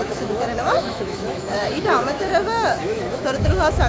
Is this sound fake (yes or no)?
yes